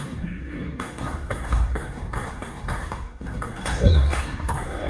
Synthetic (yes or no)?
yes